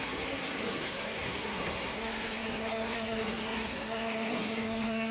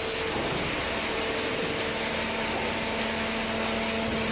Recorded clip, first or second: second